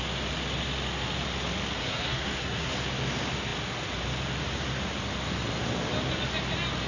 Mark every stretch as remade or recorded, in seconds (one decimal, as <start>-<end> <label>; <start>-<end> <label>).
0.0-1.8 recorded; 1.8-2.7 remade; 2.7-6.9 recorded